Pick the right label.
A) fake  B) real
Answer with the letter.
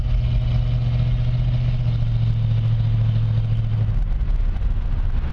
B